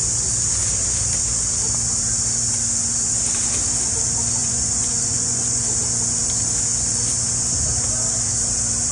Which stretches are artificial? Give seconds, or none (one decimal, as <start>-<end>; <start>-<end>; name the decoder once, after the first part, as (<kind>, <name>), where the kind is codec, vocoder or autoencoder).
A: 4.4-5.6 (vocoder, Vocos)